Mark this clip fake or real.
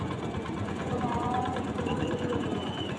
fake